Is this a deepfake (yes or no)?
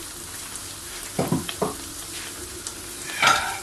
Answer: yes